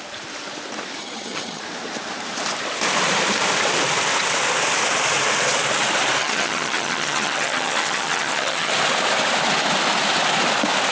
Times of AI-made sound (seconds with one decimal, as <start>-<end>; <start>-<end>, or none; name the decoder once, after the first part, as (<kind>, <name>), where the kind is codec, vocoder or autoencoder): 1.0-1.6 (vocoder, HiFi-GAN); 6.2-8.7